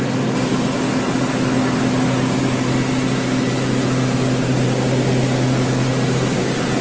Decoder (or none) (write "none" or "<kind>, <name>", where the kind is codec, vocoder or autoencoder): none